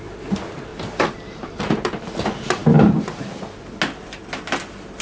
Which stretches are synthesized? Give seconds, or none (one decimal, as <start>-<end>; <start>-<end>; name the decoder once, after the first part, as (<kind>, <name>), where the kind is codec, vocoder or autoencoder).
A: 0.7-2.0 (vocoder, BigVGAN v2)